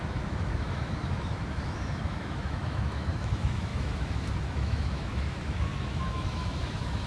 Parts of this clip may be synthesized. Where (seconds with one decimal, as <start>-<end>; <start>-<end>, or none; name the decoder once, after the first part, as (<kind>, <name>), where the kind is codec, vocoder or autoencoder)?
0.0-7.1 (autoencoder, DAC-VAE)